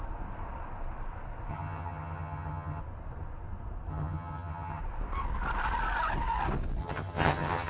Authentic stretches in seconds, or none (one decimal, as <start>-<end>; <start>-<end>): 0.0-1.5; 2.8-3.9; 4.8-6.8

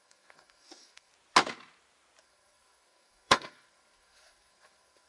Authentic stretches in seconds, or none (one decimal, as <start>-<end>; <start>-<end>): 1.1-2.2

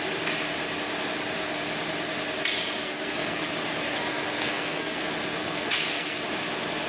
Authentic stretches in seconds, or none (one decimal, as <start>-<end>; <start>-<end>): 0.0-2.8; 3.5-4.1; 5.0-5.4; 6.2-6.9

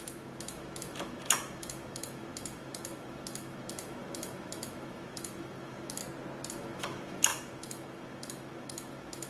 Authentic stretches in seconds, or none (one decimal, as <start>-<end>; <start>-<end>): 6.0-6.5